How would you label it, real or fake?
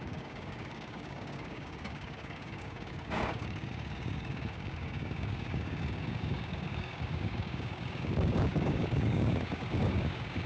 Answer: fake